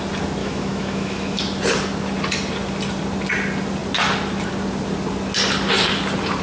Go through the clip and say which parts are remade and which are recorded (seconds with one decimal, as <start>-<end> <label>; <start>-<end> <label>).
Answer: 0.0-0.4 recorded; 0.4-1.4 remade; 1.4-6.4 recorded